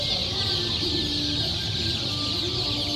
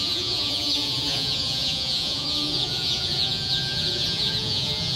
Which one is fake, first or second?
second